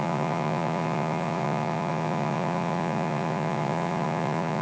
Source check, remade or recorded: remade